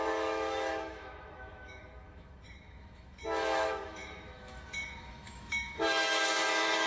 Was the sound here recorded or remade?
remade